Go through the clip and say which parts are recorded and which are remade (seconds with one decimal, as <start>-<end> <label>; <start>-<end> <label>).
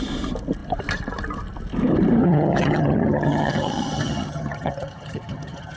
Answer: 0.0-2.2 recorded; 2.2-5.8 remade